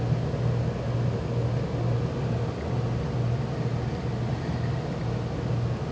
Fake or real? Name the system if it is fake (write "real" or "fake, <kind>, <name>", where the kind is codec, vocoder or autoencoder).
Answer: real